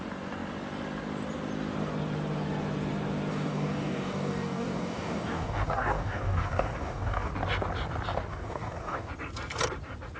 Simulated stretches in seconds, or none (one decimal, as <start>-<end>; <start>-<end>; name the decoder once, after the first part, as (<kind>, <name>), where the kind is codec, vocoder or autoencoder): 3.3-7.3 (codec, DAC); 8.3-9.1